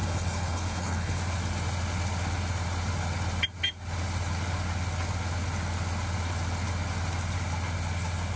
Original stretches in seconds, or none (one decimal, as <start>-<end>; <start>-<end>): 1.2-8.4